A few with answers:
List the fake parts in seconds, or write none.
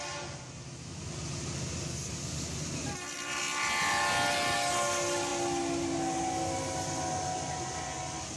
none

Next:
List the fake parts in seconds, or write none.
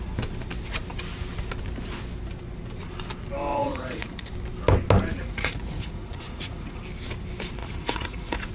3.5-4.3 (vocoder, Vocos); 5.2-6.8; 7.6-8.5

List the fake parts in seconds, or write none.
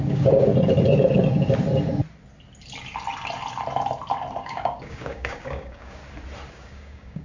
0.0-0.5 (codec, DAC); 4.3-6.0; 6.5-7.2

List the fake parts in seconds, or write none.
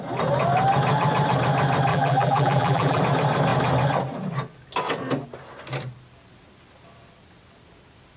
1.9-3.0 (vocoder, BigVGAN v2)